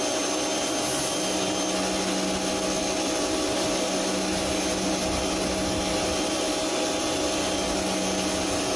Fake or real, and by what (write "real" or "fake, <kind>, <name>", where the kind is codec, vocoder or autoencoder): real